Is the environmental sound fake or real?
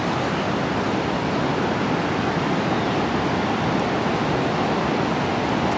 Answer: real